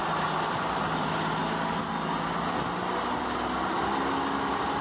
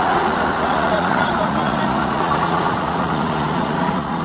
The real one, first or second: first